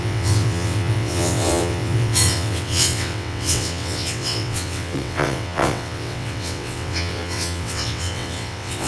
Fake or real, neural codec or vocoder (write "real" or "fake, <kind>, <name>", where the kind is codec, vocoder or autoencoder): fake, vocoder, WaveNeXt